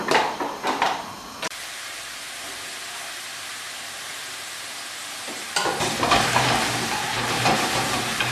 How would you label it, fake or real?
fake